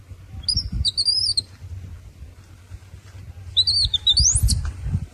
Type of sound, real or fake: real